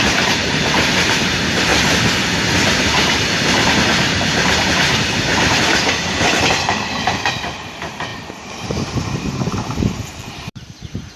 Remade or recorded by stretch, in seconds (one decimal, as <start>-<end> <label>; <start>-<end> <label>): 0.0-1.7 remade; 1.7-2.7 recorded; 2.7-5.3 remade; 5.3-7.3 recorded; 7.3-11.2 remade